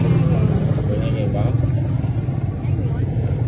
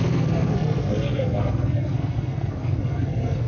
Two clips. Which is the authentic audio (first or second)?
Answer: first